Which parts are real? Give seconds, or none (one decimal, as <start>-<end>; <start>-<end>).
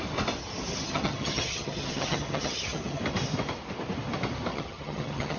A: 0.0-0.7; 3.0-4.5